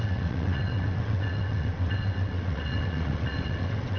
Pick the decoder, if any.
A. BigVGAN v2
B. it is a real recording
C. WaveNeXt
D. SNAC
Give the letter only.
C